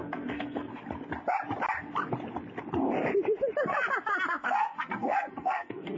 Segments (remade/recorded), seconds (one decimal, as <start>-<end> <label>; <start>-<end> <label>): 0.0-0.7 remade; 0.7-4.3 recorded; 4.3-6.0 remade